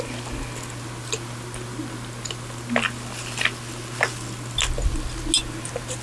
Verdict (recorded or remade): recorded